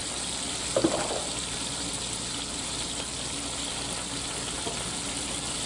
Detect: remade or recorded recorded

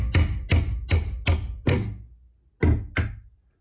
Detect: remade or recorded recorded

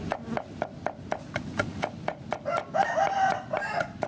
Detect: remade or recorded recorded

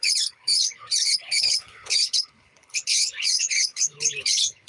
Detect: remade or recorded remade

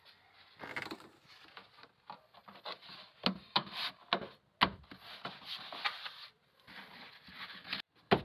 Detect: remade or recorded recorded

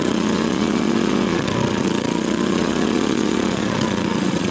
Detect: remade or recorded remade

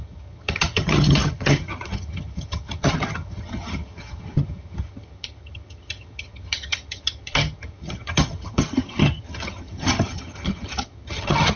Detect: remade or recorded remade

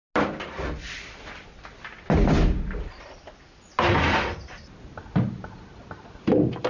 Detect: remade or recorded recorded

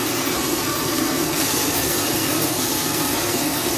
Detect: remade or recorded remade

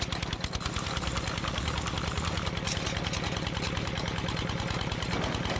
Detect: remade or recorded recorded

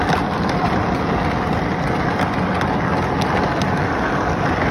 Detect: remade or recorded recorded